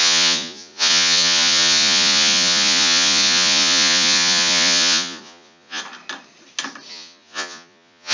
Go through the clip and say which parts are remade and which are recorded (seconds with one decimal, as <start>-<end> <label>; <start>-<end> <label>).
0.0-5.8 remade; 5.8-6.9 recorded; 6.9-8.1 remade